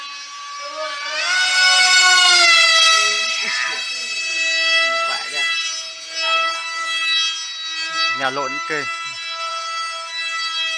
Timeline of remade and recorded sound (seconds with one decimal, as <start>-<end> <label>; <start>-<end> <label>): 0.0-10.8 recorded